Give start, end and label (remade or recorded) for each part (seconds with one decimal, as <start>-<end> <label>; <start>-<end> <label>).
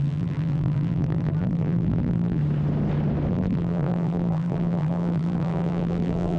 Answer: 0.0-2.4 remade; 2.4-3.3 recorded; 3.3-6.4 remade